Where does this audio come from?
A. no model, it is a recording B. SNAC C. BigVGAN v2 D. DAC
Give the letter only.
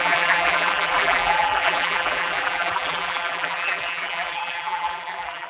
C